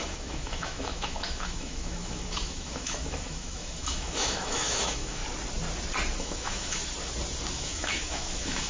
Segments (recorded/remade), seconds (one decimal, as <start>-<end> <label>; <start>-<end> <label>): 0.0-5.2 remade; 5.2-6.2 recorded; 6.2-6.8 remade; 6.8-7.5 recorded; 7.5-8.7 remade